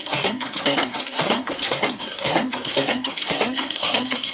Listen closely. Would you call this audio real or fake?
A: fake